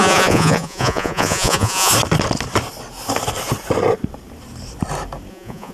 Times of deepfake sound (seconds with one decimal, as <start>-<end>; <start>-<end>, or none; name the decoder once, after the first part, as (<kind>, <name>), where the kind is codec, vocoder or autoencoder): 0.0-1.9 (vocoder, Vocos); 5.3-5.7